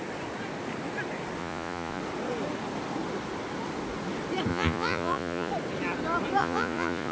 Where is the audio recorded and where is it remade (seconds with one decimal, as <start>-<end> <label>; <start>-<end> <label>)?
0.0-1.4 recorded; 1.4-2.0 remade; 2.0-4.5 recorded; 4.5-5.5 remade; 5.5-6.4 recorded; 6.4-7.1 remade